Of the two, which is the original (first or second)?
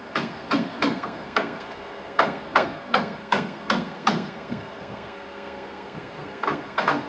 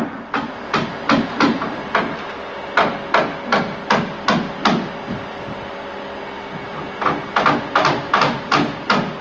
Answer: second